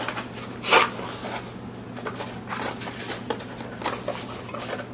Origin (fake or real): real